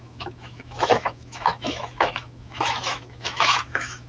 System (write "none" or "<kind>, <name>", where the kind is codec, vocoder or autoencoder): autoencoder, DAC-VAE